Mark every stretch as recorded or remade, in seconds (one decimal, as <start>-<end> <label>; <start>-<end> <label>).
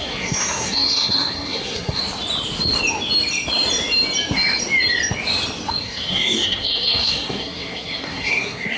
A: 0.0-2.0 remade; 2.0-5.8 recorded; 5.8-8.8 remade